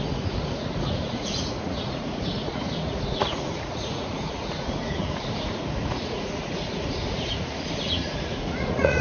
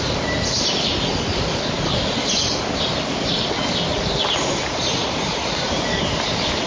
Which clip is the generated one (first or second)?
first